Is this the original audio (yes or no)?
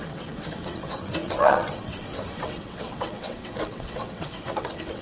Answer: no